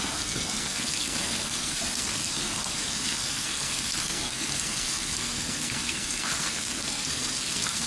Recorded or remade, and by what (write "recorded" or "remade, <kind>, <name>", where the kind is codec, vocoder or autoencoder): remade, codec, SNAC